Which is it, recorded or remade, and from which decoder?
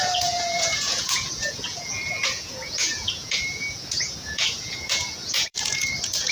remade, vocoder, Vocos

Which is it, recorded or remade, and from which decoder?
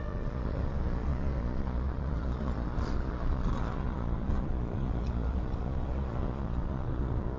remade, vocoder, Vocos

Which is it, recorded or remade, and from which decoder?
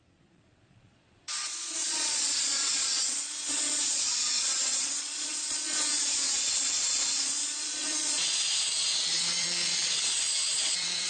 remade, vocoder, Vocos